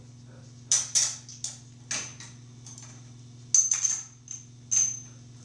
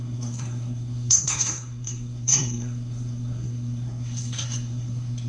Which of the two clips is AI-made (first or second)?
second